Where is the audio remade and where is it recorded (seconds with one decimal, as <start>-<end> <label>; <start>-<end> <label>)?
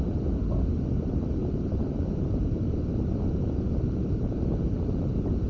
0.0-1.4 recorded; 1.4-4.7 remade; 4.7-5.5 recorded